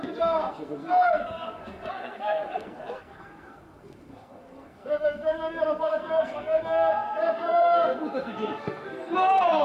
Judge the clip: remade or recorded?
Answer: remade